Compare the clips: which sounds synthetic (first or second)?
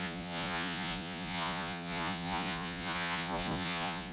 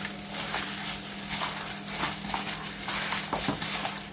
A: first